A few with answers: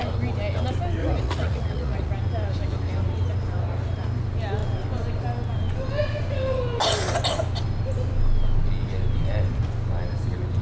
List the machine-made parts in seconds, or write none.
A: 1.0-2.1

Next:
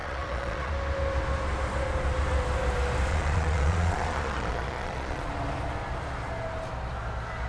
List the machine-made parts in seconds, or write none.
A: 0.0-0.7; 3.1-5.3